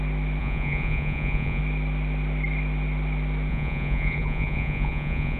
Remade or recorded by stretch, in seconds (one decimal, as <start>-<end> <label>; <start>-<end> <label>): 0.0-0.4 recorded; 0.4-1.6 remade; 1.6-3.5 recorded; 3.5-5.4 remade